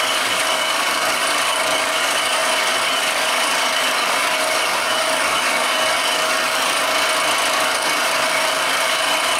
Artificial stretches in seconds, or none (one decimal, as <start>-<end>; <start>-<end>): 0.0-6.9; 7.5-9.4